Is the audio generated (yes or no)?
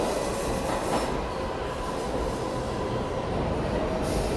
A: no